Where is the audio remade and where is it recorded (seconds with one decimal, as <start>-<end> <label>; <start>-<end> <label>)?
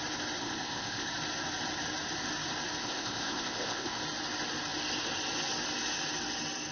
0.0-0.4 recorded; 0.4-1.1 remade; 1.1-2.8 recorded; 2.8-4.0 remade; 4.0-6.7 recorded